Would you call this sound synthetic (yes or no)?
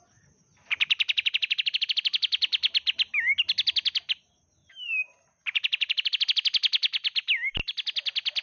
no